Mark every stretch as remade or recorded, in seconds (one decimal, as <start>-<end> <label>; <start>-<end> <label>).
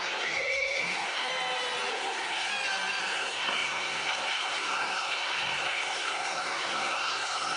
0.0-1.3 remade; 1.3-1.9 recorded; 1.9-2.5 remade; 2.5-3.0 recorded; 3.0-7.6 remade